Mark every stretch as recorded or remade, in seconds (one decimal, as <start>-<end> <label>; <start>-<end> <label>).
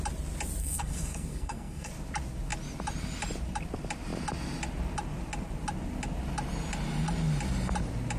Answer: 0.0-0.6 recorded; 0.6-1.9 remade; 1.9-8.2 recorded